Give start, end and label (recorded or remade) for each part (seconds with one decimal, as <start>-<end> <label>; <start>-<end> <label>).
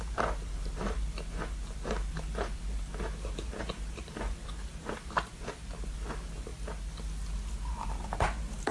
0.0-6.5 remade; 6.5-7.5 recorded; 7.5-8.7 remade